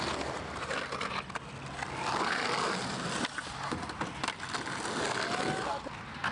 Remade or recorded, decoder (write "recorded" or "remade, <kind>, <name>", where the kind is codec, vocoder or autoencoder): recorded